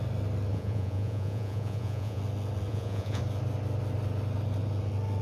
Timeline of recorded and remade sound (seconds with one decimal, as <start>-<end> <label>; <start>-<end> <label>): 0.0-0.5 recorded; 0.5-2.2 remade; 2.2-2.7 recorded; 2.7-3.2 remade; 3.2-5.2 recorded